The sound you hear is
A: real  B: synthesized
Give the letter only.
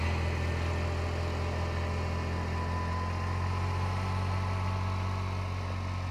A